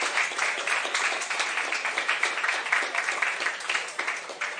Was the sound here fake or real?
fake